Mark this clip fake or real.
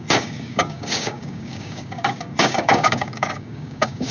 fake